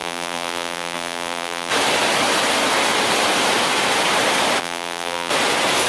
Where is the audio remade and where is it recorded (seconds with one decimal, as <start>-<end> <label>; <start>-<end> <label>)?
0.0-1.7 remade; 1.7-4.6 recorded; 4.6-5.3 remade; 5.3-5.9 recorded